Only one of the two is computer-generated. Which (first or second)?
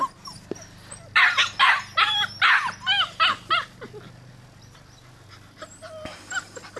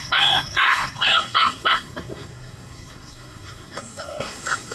second